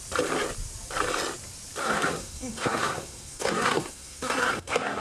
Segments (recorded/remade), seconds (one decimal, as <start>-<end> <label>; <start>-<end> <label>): 0.0-1.8 recorded; 1.8-5.0 remade